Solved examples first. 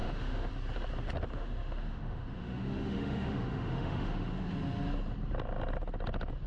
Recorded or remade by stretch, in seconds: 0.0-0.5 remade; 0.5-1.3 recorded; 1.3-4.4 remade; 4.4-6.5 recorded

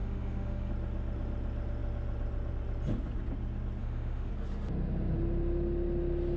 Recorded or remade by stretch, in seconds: 0.0-0.7 remade; 0.7-3.8 recorded; 3.8-4.3 remade; 4.3-6.4 recorded

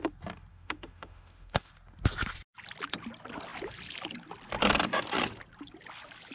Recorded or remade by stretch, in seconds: 0.0-0.5 recorded; 0.5-1.7 remade; 1.7-6.3 recorded